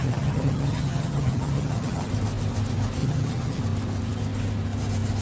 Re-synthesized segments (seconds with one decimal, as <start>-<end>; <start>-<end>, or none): 0.0-2.1; 3.0-3.6